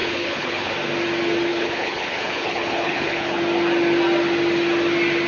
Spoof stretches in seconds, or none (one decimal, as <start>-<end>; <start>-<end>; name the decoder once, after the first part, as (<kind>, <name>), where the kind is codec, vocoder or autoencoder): 0.0-0.7 (codec, HILCodec); 1.5-3.4